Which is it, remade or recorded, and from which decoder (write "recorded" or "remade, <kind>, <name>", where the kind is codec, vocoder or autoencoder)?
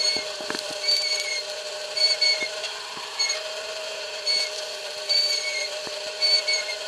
remade, vocoder, BigVGAN v2